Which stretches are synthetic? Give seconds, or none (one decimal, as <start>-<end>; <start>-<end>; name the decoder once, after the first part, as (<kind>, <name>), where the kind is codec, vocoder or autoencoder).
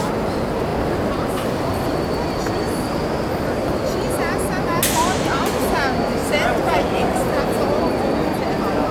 6.2-7.3 (vocoder, BigVGAN v2)